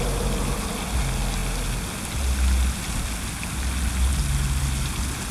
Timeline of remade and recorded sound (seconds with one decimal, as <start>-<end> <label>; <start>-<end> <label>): 0.0-5.3 recorded